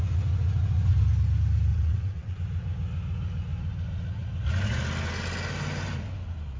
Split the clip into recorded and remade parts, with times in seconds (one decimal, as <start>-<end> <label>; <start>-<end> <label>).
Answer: 0.0-1.7 recorded; 1.7-2.4 remade; 2.4-6.6 recorded